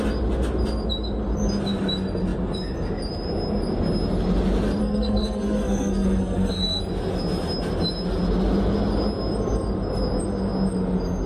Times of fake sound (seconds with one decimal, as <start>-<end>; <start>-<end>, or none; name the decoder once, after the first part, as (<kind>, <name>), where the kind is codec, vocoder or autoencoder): 4.8-6.8 (codec, SNAC)